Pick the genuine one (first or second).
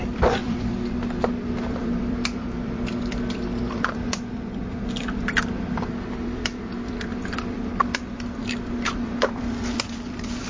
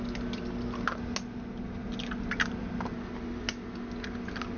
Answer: second